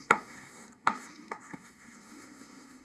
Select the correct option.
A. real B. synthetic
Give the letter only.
B